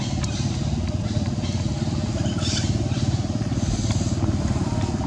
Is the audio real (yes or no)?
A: yes